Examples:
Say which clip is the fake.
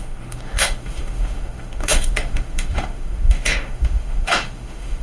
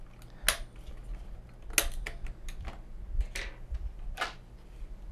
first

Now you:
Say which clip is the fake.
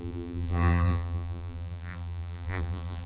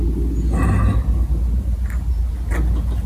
first